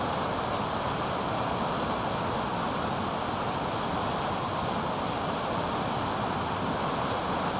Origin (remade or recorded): recorded